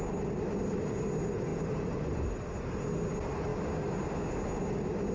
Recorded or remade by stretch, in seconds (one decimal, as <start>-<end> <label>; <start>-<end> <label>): 0.0-1.5 recorded; 1.5-2.7 remade; 2.7-5.1 recorded